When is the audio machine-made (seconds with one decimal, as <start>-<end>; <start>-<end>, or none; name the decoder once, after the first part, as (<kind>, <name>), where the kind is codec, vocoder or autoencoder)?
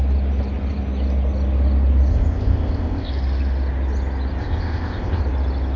2.1-3.1 (codec, ZipCodec); 4.4-5.2